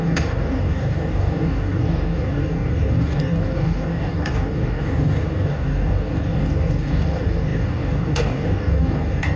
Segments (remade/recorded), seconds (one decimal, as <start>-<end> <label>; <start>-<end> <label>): 0.0-9.4 remade